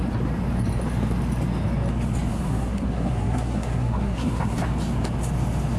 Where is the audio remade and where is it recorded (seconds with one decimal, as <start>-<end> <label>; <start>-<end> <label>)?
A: 0.0-2.3 recorded; 2.3-4.6 remade; 4.6-5.8 recorded